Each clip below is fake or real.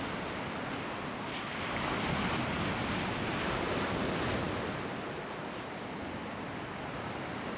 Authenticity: real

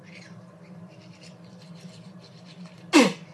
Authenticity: real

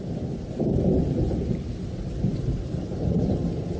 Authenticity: fake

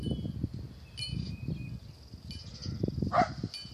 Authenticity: real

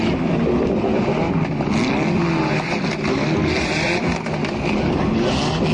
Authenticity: real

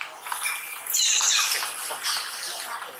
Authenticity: real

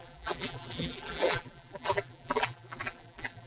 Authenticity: fake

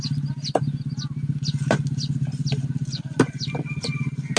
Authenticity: real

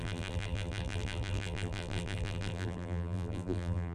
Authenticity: fake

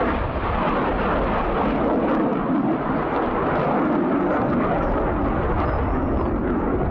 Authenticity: real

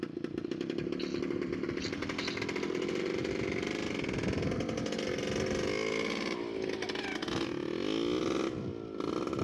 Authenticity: real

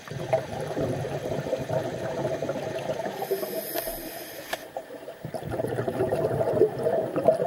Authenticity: fake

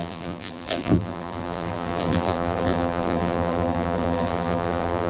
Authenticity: fake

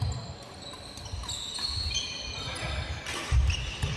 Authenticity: real